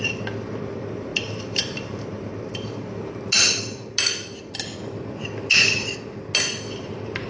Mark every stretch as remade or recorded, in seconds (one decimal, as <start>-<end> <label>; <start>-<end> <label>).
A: 0.0-1.1 recorded; 1.1-3.0 remade; 3.0-7.3 recorded